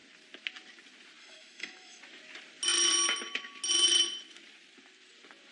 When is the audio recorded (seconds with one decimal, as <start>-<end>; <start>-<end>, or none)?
0.0-1.2; 2.0-5.5